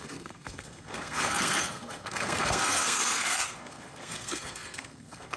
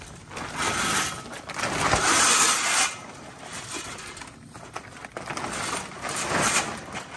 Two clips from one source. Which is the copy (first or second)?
first